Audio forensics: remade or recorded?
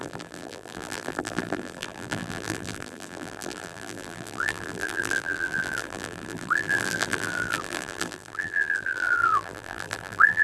remade